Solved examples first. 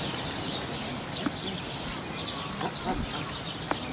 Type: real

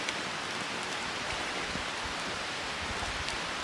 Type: real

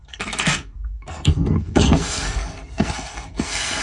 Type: fake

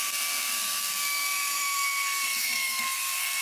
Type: fake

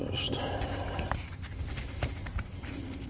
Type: real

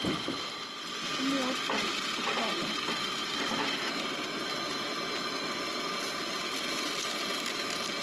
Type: real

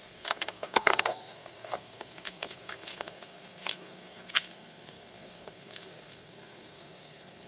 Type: fake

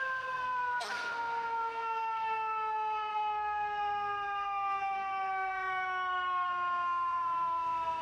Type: fake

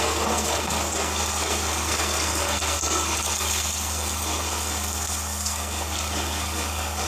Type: fake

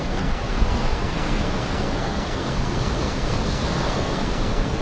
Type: fake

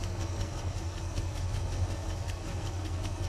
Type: fake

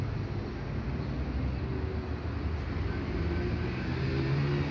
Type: real